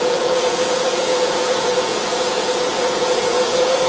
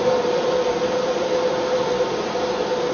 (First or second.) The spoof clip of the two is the first